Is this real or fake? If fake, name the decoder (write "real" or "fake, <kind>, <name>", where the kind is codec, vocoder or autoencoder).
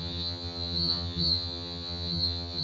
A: fake, vocoder, HiFi-GAN